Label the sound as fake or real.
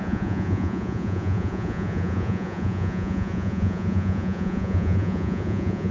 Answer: fake